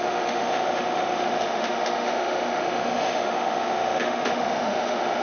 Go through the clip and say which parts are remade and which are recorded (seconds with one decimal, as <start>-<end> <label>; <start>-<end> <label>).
0.0-5.2 remade